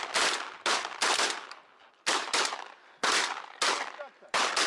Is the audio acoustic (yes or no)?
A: yes